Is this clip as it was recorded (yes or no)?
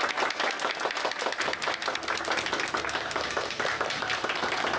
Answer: yes